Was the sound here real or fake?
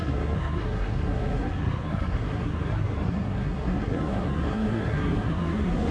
fake